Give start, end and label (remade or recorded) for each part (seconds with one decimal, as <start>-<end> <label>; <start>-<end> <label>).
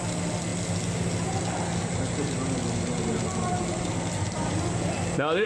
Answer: 0.0-5.5 recorded